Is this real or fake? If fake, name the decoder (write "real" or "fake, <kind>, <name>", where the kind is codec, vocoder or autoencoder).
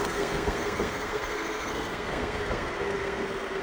fake, codec, SNAC